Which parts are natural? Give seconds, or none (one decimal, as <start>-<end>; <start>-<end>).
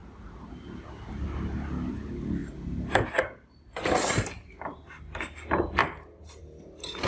0.0-7.1